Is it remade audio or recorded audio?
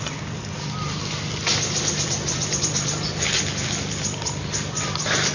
recorded